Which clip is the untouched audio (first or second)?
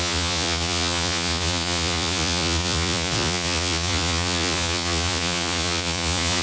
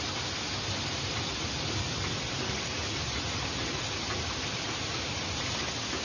second